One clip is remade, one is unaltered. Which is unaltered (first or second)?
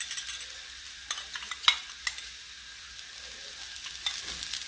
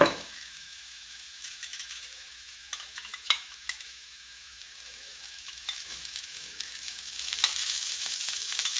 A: first